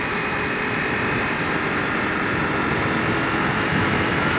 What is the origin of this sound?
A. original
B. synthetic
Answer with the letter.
A